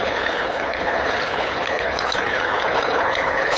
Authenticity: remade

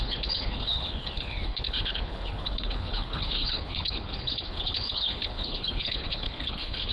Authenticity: remade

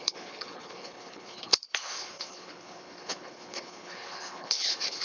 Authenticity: remade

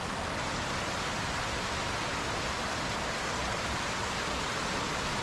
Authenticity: recorded